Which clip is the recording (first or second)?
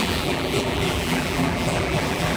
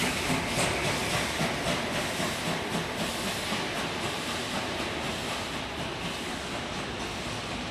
second